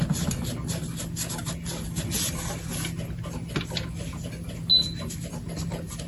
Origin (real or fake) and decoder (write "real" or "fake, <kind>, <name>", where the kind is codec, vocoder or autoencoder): real